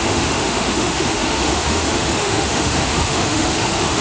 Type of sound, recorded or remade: remade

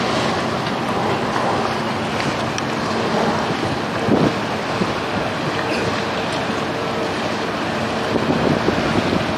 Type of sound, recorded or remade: recorded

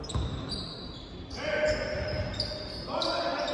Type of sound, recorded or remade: recorded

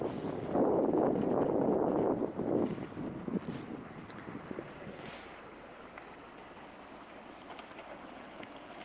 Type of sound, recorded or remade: recorded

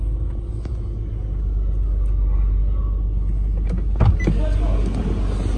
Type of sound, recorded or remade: recorded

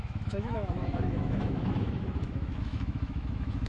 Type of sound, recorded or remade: remade